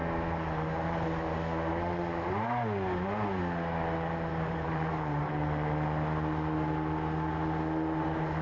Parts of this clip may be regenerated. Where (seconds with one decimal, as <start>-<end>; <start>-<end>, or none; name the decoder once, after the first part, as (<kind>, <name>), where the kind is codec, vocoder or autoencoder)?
4.3-5.4 (vocoder, BigVGAN v2)